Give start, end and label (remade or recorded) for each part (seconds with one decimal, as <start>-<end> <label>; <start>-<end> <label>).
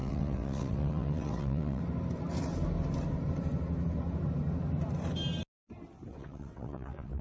0.0-1.8 remade; 1.8-6.1 recorded; 6.1-7.2 remade